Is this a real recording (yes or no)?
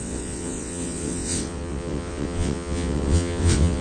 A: no